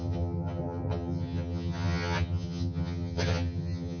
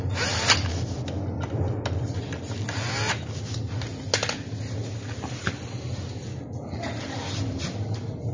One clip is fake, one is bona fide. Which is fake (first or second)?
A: first